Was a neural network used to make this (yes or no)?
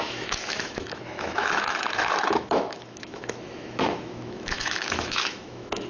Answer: yes